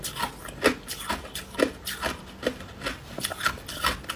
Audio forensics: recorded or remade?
recorded